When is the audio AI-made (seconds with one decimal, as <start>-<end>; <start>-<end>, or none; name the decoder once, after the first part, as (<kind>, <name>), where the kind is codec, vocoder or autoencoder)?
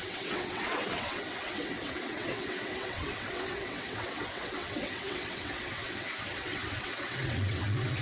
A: 0.0-8.0 (vocoder, WaveNeXt)